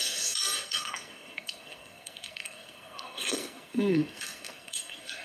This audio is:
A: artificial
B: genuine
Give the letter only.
A